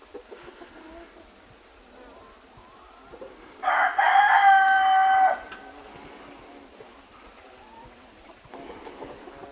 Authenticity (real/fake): real